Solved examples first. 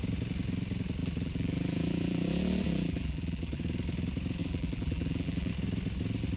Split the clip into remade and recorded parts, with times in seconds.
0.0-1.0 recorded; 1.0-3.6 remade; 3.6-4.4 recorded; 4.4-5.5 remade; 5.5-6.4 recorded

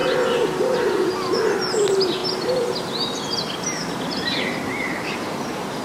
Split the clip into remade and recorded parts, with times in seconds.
0.0-2.2 recorded; 2.2-5.8 remade

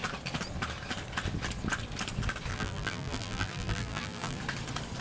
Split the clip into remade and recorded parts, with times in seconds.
0.0-2.5 recorded; 2.5-4.4 remade; 4.4-5.0 recorded

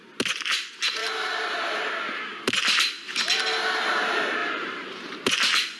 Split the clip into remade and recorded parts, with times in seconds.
0.0-1.0 recorded; 1.0-2.4 remade; 2.4-4.4 recorded; 4.4-5.3 remade; 5.3-5.8 recorded